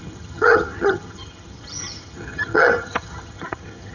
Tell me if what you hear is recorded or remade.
remade